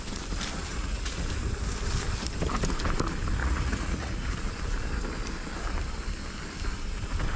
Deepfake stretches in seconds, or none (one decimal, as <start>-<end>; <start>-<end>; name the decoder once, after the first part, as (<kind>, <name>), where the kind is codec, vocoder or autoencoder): 0.7-1.3 (vocoder, Vocos); 3.4-4.5